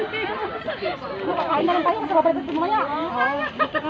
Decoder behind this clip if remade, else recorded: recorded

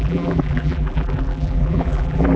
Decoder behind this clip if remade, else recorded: remade, vocoder, BigVGAN v2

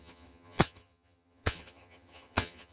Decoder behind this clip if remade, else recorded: remade, vocoder, HiFi-GAN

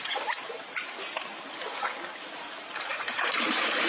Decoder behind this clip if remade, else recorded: remade, vocoder, BigVGAN v2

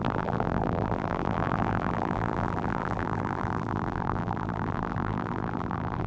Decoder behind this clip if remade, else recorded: remade, vocoder, BigVGAN v2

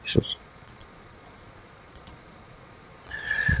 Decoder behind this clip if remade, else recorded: remade, vocoder, Vocos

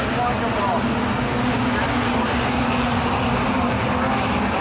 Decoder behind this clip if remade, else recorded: recorded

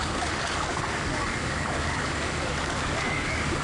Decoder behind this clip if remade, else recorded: remade, codec, DAC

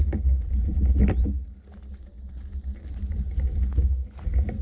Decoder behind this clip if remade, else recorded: recorded